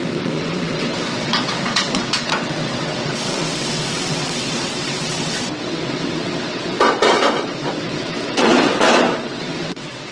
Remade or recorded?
remade